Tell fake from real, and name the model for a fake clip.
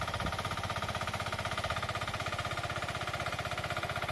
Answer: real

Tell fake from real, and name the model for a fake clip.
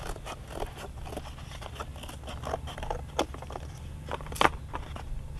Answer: real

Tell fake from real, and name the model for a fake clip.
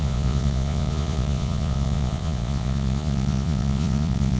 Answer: fake, vocoder, Vocos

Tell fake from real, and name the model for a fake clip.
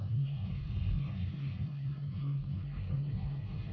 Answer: fake, codec, SNAC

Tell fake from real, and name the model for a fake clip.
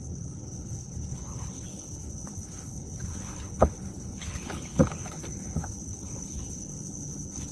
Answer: fake, codec, HILCodec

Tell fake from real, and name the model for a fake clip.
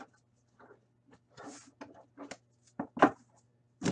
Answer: real